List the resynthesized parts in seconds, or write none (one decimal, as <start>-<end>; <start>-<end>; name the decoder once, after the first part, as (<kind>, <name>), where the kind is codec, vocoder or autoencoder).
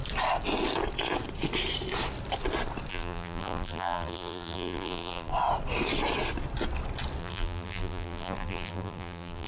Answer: 2.9-5.3 (vocoder, BigVGAN v2); 7.2-9.5